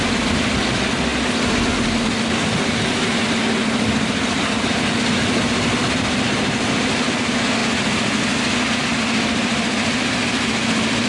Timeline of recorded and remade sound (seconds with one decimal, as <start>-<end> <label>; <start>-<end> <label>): 0.0-11.1 remade